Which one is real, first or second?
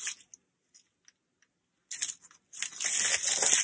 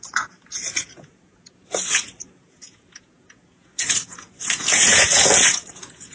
first